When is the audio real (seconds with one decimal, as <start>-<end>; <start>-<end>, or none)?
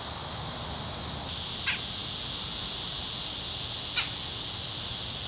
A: 0.0-5.3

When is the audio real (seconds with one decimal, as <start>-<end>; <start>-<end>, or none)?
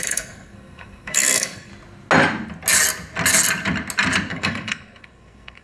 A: 1.7-4.3